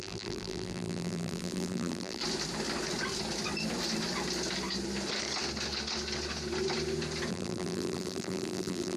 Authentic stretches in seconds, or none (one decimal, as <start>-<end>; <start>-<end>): 2.2-7.3